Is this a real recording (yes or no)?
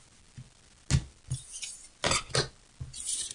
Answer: yes